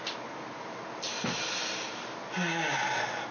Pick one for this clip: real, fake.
real